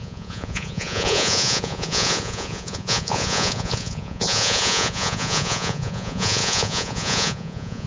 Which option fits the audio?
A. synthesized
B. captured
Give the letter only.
A